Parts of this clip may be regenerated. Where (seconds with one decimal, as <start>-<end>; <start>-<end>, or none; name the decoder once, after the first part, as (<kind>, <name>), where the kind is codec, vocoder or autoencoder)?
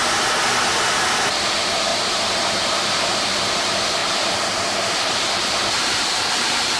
1.3-1.9 (vocoder, BigVGAN v2); 2.6-6.8